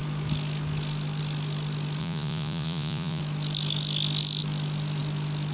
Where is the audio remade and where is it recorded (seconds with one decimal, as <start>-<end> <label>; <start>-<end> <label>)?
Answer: 0.0-2.0 recorded; 2.0-3.2 remade; 3.2-5.5 recorded